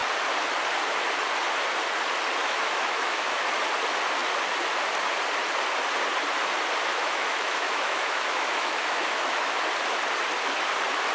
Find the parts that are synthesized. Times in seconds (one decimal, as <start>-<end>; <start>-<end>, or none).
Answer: 2.4-3.5; 6.9-9.6